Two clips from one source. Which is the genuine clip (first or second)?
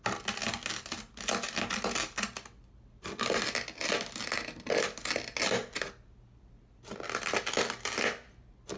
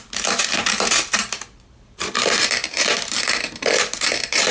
first